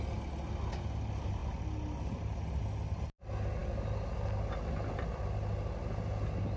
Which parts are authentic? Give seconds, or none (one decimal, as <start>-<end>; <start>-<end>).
0.0-6.6